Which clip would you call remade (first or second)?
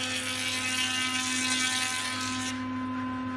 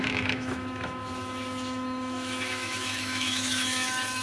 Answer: second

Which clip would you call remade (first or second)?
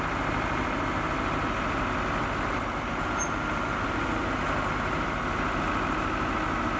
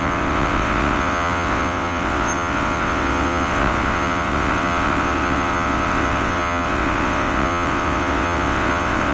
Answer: second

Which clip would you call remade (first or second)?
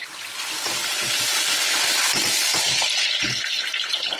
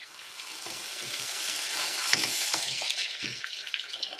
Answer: second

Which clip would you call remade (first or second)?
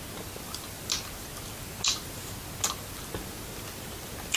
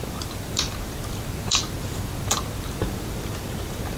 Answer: second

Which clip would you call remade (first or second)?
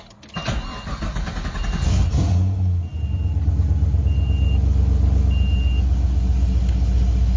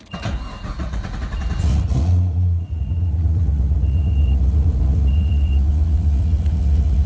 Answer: second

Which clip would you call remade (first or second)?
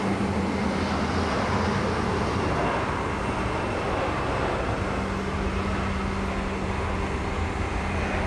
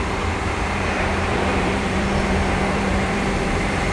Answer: second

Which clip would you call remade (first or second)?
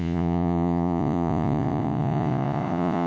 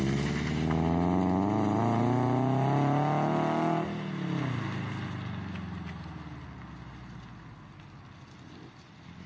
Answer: first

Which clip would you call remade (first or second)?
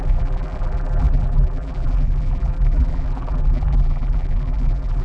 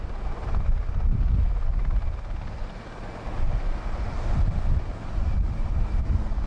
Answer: first